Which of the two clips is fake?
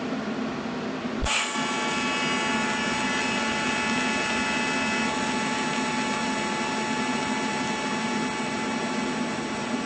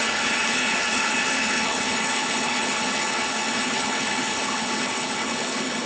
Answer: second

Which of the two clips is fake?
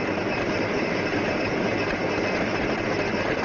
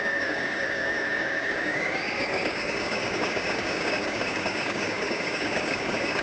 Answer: second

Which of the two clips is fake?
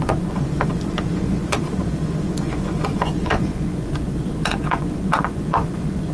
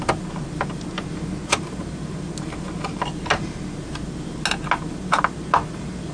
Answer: first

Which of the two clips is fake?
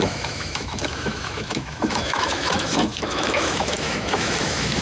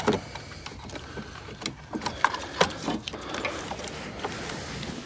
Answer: first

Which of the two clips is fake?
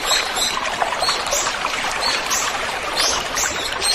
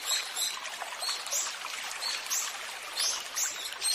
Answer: first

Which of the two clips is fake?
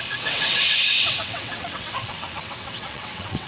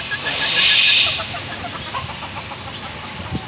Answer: first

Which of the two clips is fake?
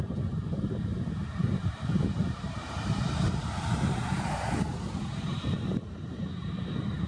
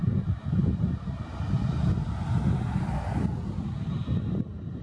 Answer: first